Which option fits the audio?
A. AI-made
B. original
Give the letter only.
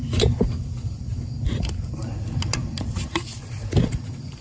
B